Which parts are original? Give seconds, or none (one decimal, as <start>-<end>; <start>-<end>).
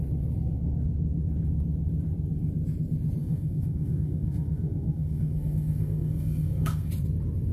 0.0-3.2; 6.9-7.5